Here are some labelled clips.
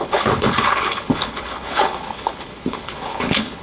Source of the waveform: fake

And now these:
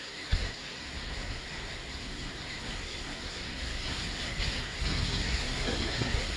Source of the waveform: fake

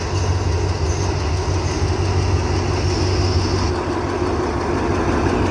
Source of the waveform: real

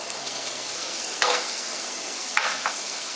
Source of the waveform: fake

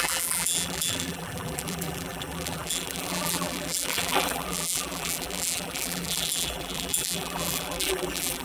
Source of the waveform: fake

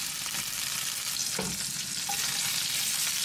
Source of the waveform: real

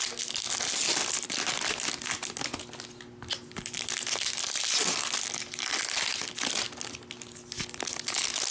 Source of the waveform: real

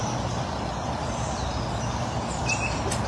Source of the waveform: real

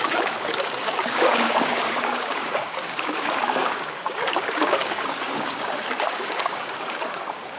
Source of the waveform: fake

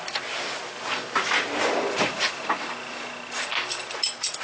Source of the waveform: real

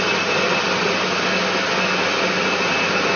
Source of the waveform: real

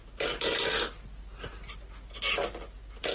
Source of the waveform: real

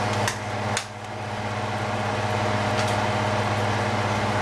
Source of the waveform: real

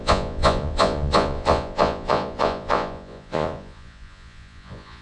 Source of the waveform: fake